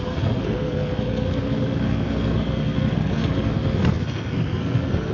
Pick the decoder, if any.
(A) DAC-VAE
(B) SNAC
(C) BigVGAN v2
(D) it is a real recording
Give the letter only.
B